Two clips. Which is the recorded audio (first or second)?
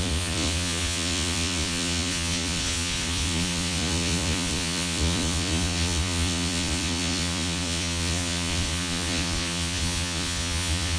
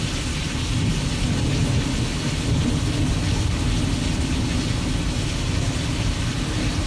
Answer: second